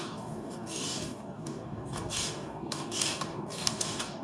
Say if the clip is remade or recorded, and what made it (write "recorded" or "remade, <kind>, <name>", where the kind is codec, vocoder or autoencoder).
remade, codec, DAC